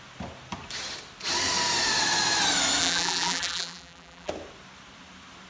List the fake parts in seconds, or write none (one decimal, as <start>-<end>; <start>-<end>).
2.8-4.3